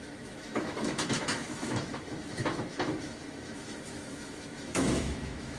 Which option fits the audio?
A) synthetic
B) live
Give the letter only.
A